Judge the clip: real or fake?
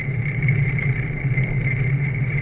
real